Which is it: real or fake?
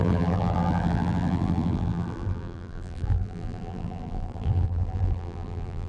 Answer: fake